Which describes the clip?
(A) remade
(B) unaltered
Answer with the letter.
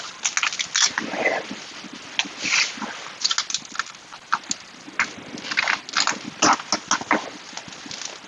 B